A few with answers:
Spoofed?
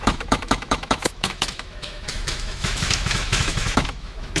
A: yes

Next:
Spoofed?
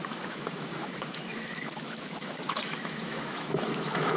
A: yes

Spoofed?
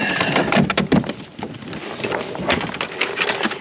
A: no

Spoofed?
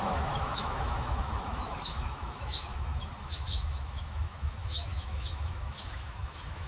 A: yes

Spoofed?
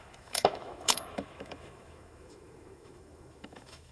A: yes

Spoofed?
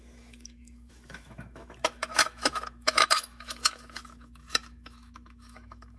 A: yes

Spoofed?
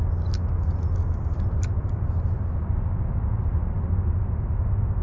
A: no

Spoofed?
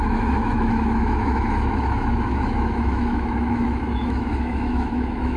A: yes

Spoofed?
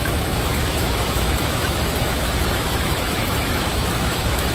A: yes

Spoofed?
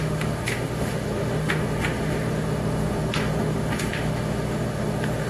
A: yes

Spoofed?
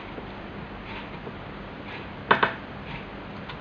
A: no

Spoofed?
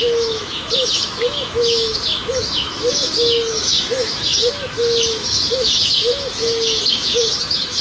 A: yes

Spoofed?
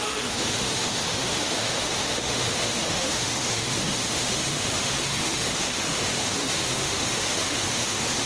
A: yes